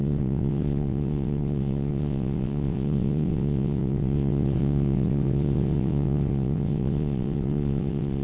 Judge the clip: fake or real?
fake